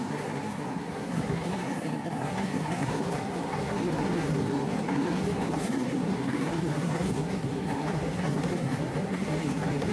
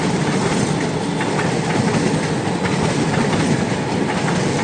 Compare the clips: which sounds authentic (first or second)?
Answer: second